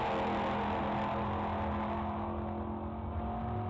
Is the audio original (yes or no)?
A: yes